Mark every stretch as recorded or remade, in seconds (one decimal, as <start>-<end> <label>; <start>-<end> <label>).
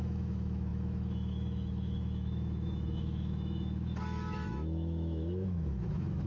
0.0-6.3 remade